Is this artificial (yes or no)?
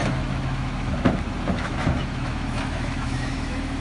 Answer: yes